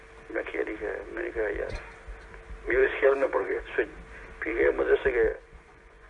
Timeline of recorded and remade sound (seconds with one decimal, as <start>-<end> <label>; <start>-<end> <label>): 0.0-2.8 recorded; 2.8-3.6 remade; 3.6-5.3 recorded; 5.3-6.1 remade